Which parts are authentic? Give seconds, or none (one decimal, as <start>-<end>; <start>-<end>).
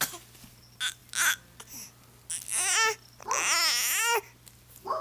0.0-5.0